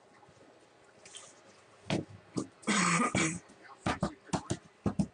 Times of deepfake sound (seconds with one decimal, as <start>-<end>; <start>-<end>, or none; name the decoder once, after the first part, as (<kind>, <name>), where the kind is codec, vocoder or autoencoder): none